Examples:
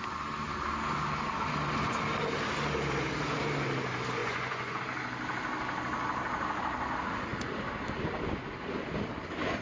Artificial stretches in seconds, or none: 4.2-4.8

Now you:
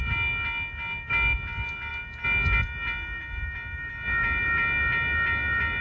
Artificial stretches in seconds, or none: none

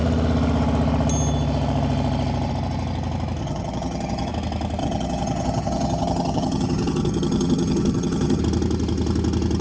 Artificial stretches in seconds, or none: 3.4-4.3; 4.8-8.4

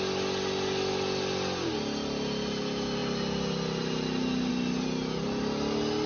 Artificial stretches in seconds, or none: none